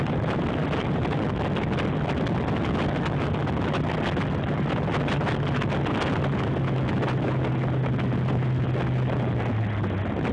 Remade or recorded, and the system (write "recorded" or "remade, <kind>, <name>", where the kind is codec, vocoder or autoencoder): recorded